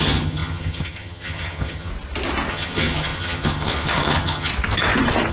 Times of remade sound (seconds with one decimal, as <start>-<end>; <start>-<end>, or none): 0.0-1.9; 2.5-4.5